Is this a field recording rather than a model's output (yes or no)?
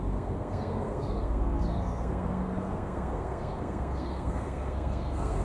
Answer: no